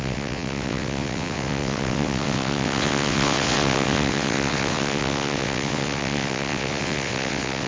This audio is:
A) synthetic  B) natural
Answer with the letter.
A